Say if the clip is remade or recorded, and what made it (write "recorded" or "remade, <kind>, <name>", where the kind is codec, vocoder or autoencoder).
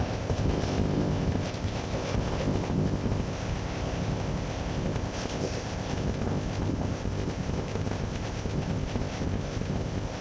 remade, codec, ZipCodec